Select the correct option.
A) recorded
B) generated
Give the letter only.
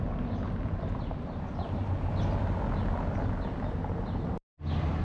A